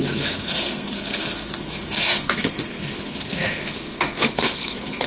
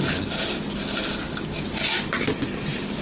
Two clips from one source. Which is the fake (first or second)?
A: first